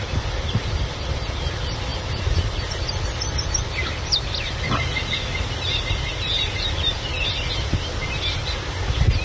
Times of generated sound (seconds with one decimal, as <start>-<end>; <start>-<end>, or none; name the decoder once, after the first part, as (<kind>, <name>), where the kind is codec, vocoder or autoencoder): none